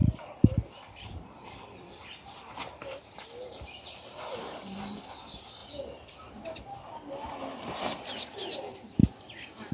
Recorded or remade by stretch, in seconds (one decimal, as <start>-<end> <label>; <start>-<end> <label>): 0.0-9.7 recorded